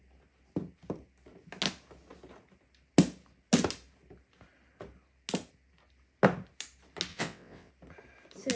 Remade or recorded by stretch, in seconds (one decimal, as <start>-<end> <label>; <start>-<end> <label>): 0.0-7.1 recorded; 7.1-7.7 remade; 7.7-8.6 recorded